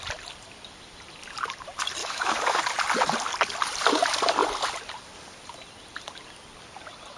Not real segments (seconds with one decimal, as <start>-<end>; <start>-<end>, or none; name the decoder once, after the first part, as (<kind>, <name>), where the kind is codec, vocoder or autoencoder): 2.0-2.6 (autoencoder, DAC-VAE)